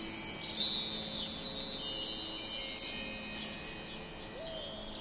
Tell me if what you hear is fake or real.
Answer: real